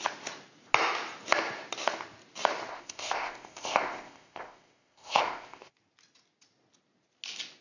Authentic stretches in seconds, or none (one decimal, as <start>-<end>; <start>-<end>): 0.0-2.7; 5.7-7.6